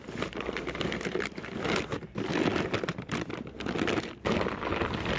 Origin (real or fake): real